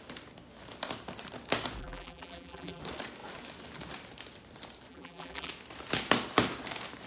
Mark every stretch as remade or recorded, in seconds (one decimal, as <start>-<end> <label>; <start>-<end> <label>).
0.0-1.8 recorded; 1.8-2.8 remade; 2.8-4.9 recorded; 4.9-5.5 remade; 5.5-7.1 recorded